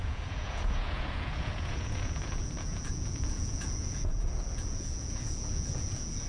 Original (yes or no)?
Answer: no